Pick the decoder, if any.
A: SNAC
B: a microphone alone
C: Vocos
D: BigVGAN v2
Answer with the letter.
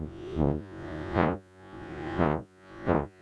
C